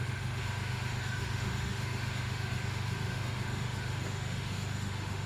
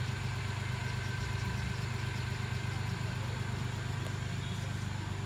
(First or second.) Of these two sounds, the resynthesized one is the first